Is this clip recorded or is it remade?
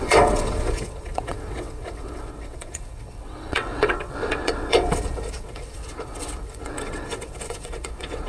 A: remade